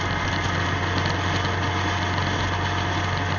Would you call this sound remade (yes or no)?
no